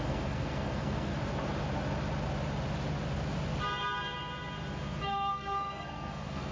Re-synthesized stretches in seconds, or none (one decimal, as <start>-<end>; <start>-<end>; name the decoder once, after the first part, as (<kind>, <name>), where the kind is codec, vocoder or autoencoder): 0.0-1.1 (codec, SNAC); 5.0-6.5